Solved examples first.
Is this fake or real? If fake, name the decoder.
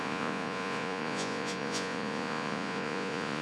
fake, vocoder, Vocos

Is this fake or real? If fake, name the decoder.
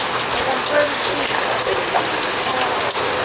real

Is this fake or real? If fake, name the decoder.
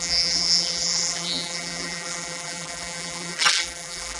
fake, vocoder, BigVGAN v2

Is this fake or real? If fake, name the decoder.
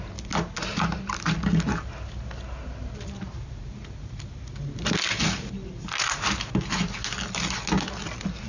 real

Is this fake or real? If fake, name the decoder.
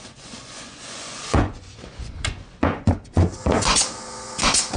fake, vocoder, Vocos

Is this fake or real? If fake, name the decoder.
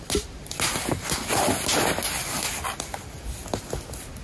real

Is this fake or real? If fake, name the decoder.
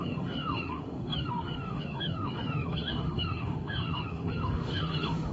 fake, autoencoder, DAC-VAE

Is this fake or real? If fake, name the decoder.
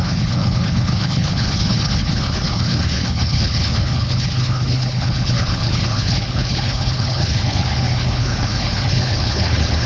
fake, codec, HILCodec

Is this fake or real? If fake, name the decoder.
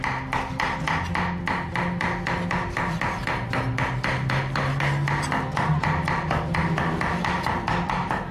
real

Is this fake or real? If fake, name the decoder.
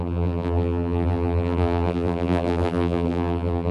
fake, vocoder, BigVGAN v2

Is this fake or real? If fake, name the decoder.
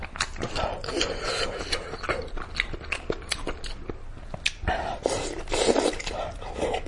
real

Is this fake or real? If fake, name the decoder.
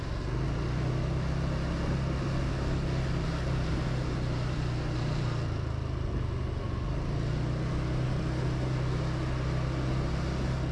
real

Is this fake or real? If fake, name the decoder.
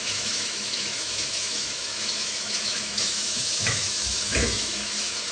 fake, autoencoder, DAC-VAE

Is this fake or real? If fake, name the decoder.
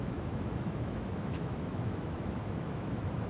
fake, autoencoder, DAC-VAE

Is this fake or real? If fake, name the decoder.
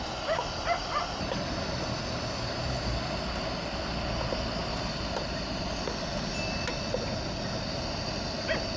real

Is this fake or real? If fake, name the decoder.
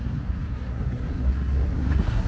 fake, codec, SNAC